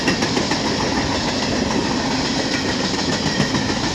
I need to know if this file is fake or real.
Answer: real